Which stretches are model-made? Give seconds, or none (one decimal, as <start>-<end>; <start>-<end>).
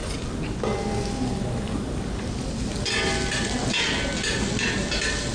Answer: none